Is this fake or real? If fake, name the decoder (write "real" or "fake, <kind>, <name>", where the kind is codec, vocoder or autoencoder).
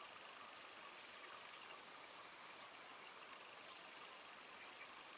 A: real